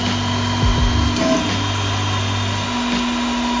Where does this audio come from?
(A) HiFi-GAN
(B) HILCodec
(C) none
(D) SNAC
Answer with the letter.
C